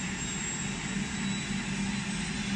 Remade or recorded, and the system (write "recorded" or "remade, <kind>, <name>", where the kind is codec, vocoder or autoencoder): recorded